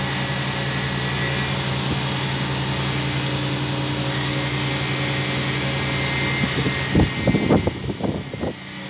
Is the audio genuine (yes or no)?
yes